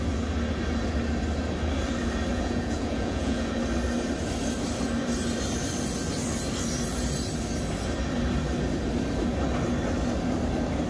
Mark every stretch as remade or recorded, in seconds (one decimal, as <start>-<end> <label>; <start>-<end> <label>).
0.0-2.3 recorded; 2.3-3.5 remade; 3.5-10.9 recorded